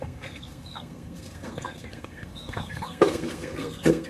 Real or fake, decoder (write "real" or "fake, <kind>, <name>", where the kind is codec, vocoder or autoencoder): fake, codec, SNAC